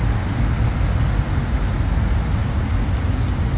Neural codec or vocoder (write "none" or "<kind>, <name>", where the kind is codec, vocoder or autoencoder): none